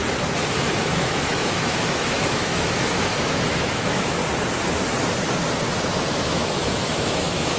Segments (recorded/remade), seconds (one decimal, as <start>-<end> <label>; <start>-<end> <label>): 0.0-0.8 recorded; 0.8-4.2 remade; 4.2-6.1 recorded; 6.1-7.6 remade

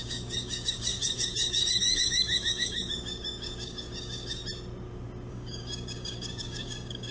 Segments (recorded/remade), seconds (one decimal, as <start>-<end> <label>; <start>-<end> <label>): 0.0-4.4 remade; 4.4-5.3 recorded; 5.3-7.1 remade

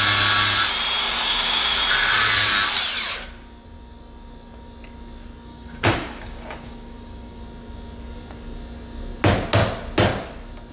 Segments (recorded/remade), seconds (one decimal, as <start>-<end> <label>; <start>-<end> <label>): 0.0-1.0 recorded; 1.0-1.8 remade; 1.8-5.5 recorded; 5.5-7.4 remade; 7.4-10.7 recorded

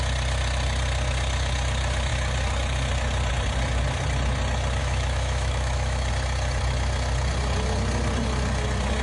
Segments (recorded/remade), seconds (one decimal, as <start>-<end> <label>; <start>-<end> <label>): 0.0-4.8 recorded; 4.8-6.1 remade; 6.1-9.0 recorded

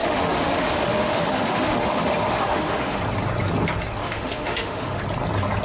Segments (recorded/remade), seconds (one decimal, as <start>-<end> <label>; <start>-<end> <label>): 0.0-3.0 remade; 3.0-4.0 recorded; 4.0-5.0 remade; 5.0-5.6 recorded

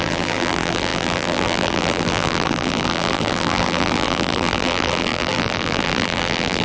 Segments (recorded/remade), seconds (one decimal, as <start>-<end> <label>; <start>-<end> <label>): 0.0-6.6 remade

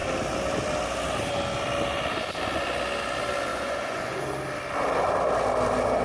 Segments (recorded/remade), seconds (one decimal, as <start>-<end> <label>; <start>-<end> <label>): 0.0-3.5 recorded; 3.5-4.2 remade; 4.2-6.0 recorded